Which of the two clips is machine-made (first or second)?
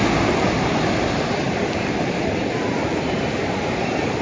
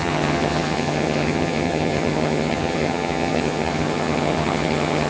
second